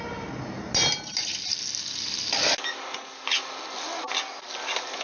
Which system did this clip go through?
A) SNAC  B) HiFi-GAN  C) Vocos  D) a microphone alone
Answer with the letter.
D